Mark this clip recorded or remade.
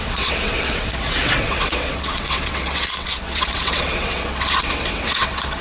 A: remade